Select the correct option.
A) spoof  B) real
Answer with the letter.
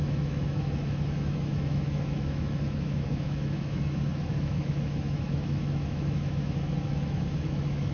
A